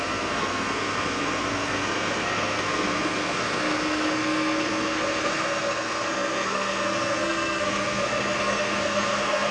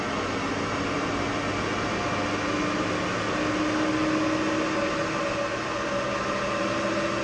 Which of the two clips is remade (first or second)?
first